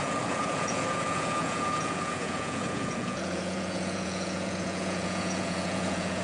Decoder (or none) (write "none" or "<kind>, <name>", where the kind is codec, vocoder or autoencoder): vocoder, Vocos